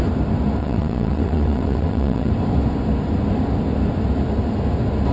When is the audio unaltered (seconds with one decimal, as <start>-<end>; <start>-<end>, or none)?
0.0-0.6; 2.3-5.1